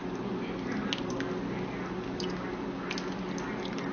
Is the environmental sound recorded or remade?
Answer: recorded